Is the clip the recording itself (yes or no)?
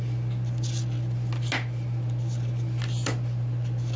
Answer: yes